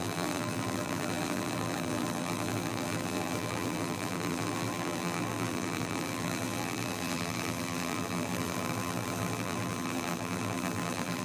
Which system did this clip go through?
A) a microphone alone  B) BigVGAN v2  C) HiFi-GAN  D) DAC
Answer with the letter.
B